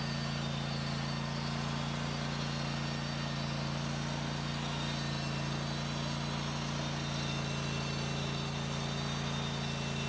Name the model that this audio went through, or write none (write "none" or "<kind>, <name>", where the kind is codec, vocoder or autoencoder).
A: none